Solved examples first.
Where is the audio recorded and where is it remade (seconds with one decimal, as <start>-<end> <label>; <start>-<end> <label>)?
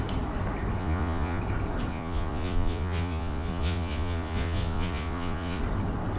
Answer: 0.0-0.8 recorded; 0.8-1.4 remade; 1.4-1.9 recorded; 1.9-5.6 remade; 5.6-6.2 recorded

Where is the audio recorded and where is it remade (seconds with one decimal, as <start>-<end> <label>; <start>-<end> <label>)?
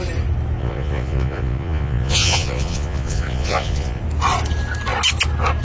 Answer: 0.0-0.6 recorded; 0.6-4.0 remade; 4.0-5.6 recorded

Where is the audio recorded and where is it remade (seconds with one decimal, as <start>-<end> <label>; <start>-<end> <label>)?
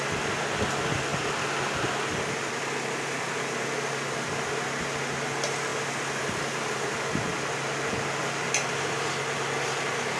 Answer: 0.0-10.2 recorded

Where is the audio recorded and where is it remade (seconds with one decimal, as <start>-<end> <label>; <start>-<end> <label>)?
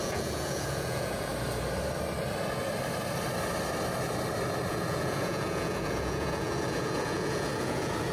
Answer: 0.0-1.3 remade; 1.3-4.7 recorded; 4.7-8.1 remade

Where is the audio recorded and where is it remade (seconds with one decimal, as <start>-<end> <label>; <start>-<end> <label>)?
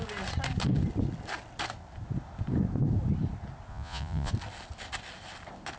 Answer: 0.0-3.7 recorded; 3.7-4.3 remade; 4.3-5.8 recorded